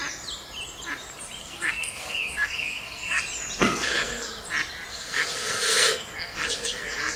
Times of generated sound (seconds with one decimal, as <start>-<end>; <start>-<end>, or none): 1.4-3.2; 3.6-4.3; 4.9-7.2